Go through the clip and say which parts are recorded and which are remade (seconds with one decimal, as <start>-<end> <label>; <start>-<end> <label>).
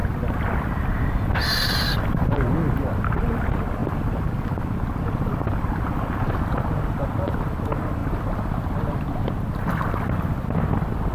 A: 0.0-3.8 recorded; 3.8-6.6 remade; 6.6-8.0 recorded; 8.0-9.3 remade; 9.3-11.1 recorded